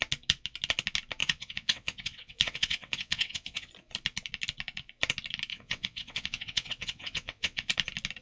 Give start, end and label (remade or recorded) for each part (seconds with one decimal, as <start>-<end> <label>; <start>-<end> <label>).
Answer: 0.0-1.2 recorded; 1.2-3.7 remade; 3.7-5.5 recorded; 5.5-7.7 remade; 7.7-8.2 recorded